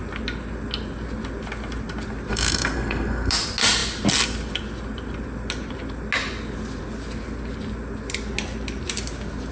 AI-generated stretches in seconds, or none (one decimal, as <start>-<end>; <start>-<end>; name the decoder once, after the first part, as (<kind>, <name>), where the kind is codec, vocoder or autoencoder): 2.3-3.3 (codec, SNAC)